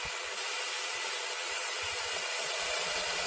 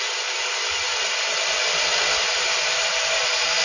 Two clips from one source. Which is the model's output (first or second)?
first